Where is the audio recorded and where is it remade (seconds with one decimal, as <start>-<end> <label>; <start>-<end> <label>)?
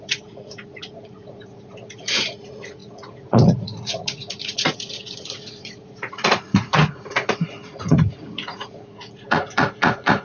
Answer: 0.0-10.2 remade